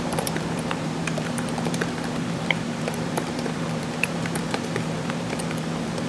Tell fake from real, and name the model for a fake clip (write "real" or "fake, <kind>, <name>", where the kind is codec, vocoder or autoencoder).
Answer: fake, vocoder, BigVGAN v2